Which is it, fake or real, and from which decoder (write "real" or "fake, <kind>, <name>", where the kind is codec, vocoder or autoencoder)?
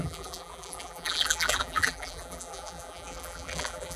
fake, vocoder, BigVGAN v2